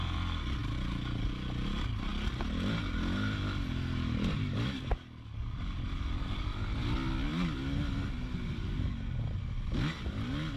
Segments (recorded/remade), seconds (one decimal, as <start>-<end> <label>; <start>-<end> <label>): 0.0-10.6 recorded